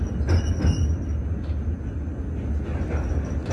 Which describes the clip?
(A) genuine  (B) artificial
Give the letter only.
A